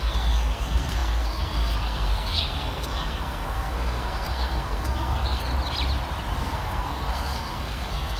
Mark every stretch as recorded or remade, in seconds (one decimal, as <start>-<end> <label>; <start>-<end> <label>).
0.0-5.5 remade; 5.5-6.4 recorded; 6.4-8.2 remade